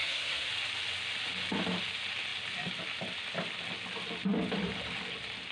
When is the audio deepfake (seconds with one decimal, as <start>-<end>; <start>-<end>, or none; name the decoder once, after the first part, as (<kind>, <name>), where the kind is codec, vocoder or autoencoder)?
0.0-0.5 (codec, SNAC)